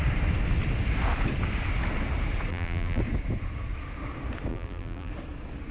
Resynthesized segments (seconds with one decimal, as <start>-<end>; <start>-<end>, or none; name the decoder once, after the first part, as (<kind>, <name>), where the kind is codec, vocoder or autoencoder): 2.5-3.0 (vocoder, BigVGAN v2); 4.5-5.1